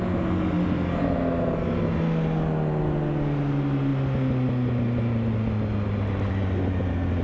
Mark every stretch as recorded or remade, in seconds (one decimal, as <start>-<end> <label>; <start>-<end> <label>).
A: 0.0-7.2 recorded